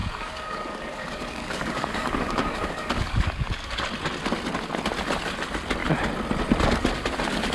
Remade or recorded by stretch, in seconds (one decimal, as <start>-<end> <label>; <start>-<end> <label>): 0.0-3.8 remade; 3.8-7.5 recorded